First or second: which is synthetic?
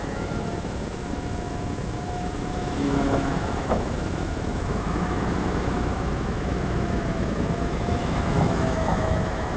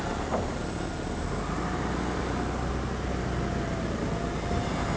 first